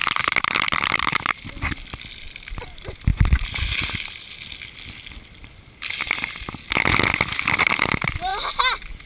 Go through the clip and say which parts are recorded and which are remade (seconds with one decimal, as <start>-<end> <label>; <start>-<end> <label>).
0.0-1.5 remade; 1.5-9.1 recorded